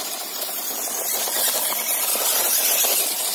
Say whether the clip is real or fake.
real